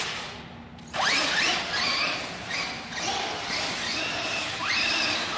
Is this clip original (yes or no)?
yes